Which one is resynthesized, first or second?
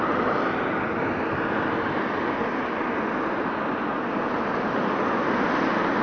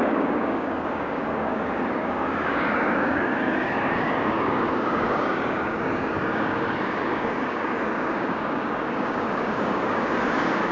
second